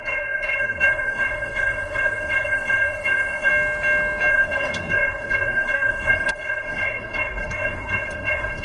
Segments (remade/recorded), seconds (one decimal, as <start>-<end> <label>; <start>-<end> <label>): 0.0-3.5 remade; 3.5-4.3 recorded; 4.3-8.6 remade